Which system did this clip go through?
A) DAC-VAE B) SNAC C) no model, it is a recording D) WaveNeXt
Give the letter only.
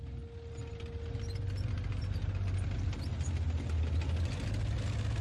C